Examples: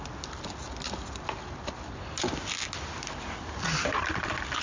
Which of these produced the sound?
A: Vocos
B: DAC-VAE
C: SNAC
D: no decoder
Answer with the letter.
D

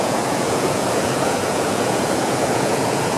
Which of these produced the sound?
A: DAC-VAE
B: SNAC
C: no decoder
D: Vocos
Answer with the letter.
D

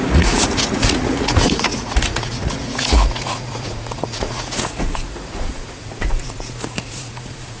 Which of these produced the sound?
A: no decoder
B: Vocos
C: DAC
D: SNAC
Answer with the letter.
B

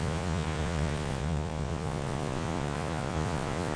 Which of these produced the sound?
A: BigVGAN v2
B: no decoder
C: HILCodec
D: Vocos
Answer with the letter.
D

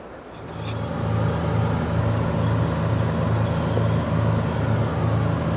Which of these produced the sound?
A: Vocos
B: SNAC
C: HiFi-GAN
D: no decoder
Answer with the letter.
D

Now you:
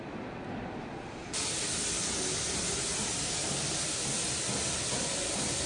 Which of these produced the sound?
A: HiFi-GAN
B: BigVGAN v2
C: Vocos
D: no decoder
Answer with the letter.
D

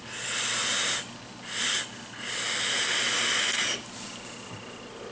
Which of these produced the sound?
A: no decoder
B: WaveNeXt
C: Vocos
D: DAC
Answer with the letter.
A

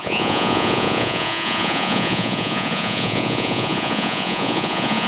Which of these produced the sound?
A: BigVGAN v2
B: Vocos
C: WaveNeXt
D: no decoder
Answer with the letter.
B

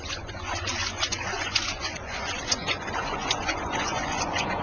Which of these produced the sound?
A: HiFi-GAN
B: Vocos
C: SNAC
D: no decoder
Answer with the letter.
B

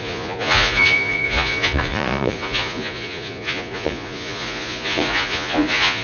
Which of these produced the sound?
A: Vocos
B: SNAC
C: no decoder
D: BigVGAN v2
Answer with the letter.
A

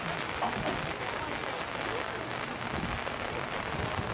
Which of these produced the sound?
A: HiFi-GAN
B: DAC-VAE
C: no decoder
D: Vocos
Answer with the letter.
C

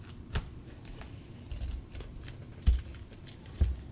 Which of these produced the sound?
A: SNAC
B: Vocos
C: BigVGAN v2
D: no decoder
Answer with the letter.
D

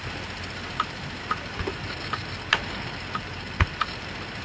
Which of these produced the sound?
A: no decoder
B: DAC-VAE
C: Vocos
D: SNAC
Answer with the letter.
A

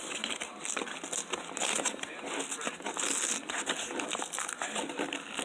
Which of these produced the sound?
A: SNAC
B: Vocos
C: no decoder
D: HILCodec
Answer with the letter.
C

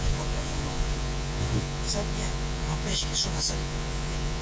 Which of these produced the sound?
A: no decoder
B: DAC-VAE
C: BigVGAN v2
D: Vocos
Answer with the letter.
D